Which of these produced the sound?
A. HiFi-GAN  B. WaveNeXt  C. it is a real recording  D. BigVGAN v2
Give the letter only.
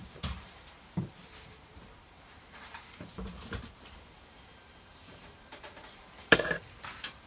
D